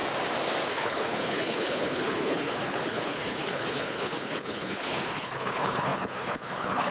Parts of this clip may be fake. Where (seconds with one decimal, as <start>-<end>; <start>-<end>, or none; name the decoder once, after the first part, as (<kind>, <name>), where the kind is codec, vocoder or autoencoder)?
0.7-6.9 (codec, HILCodec)